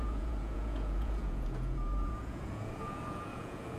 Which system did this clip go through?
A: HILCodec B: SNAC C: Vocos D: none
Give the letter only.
C